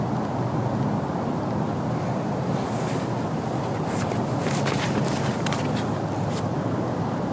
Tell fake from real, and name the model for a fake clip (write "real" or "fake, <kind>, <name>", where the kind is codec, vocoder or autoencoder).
real